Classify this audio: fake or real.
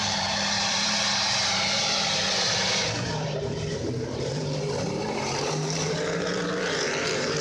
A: fake